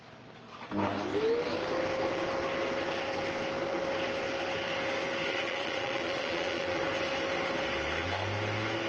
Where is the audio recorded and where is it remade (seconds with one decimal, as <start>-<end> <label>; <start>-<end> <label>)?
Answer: 0.0-5.3 recorded; 5.3-6.8 remade; 6.8-8.9 recorded